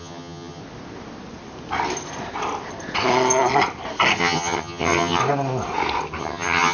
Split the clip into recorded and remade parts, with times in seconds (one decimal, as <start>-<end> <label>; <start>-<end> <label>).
0.0-0.6 remade; 0.6-4.2 recorded; 4.2-5.2 remade; 5.2-6.2 recorded; 6.2-6.7 remade